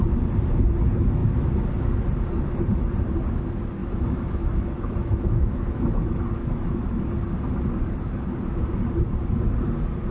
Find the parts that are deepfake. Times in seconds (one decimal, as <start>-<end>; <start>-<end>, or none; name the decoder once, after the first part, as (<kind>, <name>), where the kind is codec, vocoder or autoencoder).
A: 3.8-7.1 (autoencoder, DAC-VAE)